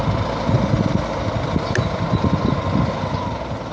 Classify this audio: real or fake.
real